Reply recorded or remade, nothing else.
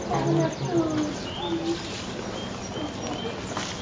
recorded